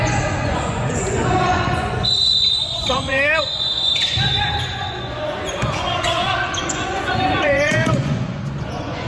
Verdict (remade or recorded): remade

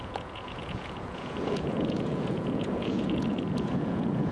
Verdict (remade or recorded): remade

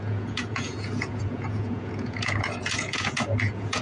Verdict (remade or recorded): remade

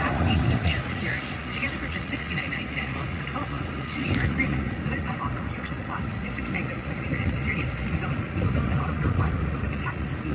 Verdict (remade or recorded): remade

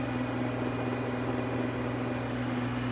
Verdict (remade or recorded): recorded